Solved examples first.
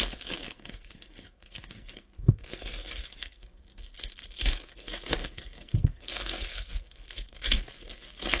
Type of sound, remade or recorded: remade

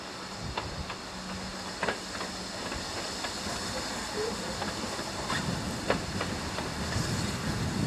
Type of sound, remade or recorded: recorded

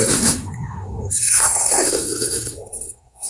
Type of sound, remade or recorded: remade